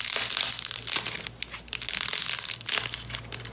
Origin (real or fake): real